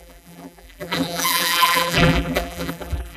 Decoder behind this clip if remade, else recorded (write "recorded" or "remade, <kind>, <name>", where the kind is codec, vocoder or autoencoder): remade, vocoder, BigVGAN v2